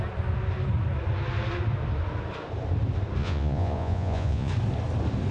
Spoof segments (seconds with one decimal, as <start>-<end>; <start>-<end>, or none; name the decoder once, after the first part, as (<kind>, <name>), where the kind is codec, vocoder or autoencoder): 3.2-4.5 (vocoder, Vocos)